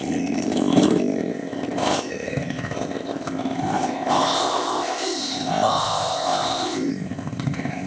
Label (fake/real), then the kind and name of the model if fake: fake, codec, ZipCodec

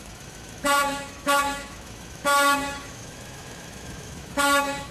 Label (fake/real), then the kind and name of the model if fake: fake, autoencoder, DAC-VAE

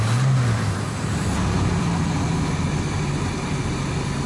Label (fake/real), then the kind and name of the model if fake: real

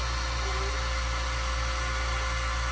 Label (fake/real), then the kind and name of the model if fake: real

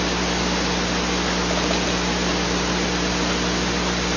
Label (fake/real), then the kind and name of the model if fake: real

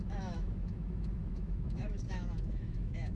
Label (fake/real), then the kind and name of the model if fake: fake, autoencoder, DAC-VAE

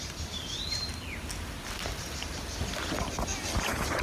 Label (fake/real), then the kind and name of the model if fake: real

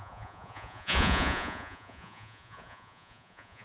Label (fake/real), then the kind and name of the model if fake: fake, vocoder, Vocos